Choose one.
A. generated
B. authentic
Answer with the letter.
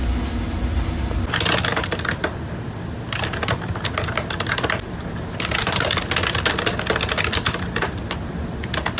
B